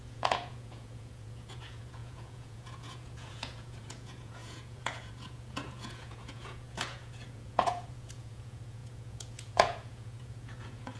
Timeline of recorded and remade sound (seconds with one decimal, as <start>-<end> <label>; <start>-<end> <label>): 0.0-11.0 remade